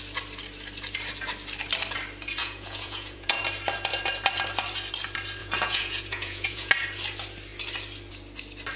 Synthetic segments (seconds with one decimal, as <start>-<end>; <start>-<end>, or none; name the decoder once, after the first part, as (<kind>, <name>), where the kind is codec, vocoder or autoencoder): 2.4-3.4 (vocoder, Vocos); 5.4-6.7